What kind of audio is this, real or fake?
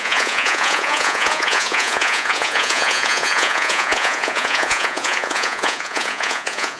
fake